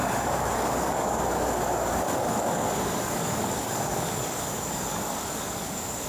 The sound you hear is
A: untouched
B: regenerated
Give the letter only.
B